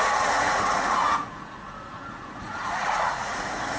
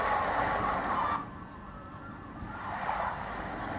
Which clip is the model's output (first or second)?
first